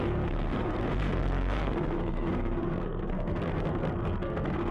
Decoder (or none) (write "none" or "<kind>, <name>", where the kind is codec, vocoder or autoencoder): codec, SNAC